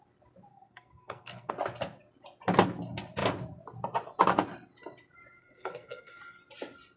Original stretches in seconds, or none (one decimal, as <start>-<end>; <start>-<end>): 0.0-0.5; 1.5-5.4; 6.2-7.0